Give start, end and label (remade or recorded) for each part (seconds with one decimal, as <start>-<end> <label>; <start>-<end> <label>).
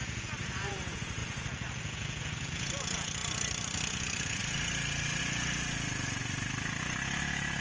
0.0-3.2 remade; 3.2-3.9 recorded; 3.9-4.4 remade; 4.4-5.2 recorded; 5.2-6.2 remade; 6.2-6.8 recorded; 6.8-7.6 remade